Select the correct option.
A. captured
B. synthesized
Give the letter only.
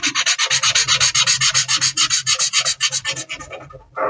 A